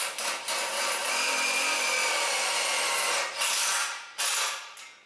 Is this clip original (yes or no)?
yes